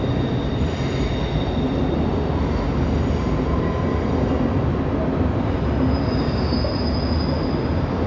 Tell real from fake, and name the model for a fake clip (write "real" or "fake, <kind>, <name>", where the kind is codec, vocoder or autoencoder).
real